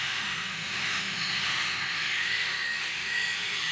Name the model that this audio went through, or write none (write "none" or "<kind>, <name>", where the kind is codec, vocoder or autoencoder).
autoencoder, DAC-VAE